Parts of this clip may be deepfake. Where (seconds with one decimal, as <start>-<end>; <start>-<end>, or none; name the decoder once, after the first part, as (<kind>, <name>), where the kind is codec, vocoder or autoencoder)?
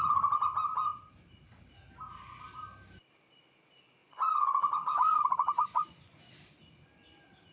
4.0-6.2 (vocoder, Vocos)